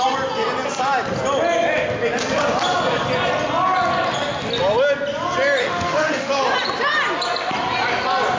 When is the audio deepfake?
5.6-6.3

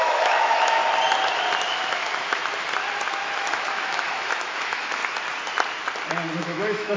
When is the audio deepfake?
0.0-0.8; 1.7-2.4; 3.1-5.0; 6.4-7.0